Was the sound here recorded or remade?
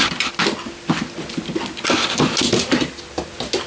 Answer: recorded